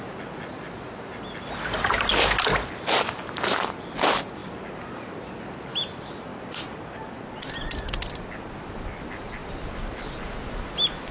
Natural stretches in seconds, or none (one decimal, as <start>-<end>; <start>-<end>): 0.0-4.4; 5.2-6.3; 7.8-11.1